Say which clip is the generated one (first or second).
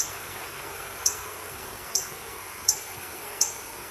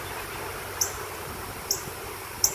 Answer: first